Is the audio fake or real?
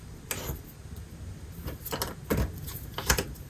real